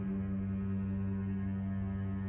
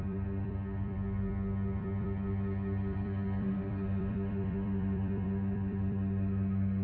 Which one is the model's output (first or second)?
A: second